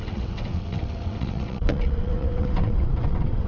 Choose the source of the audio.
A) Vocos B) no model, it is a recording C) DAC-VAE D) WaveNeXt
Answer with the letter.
D